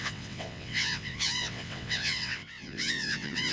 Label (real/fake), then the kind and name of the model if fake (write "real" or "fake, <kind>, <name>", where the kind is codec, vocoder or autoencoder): fake, vocoder, WaveNeXt